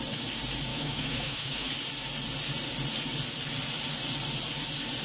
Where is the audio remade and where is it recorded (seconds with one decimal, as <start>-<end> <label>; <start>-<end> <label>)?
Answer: 0.0-0.7 recorded; 0.7-1.7 remade; 1.7-5.0 recorded